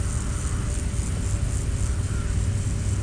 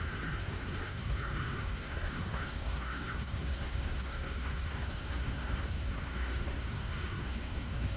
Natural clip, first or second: first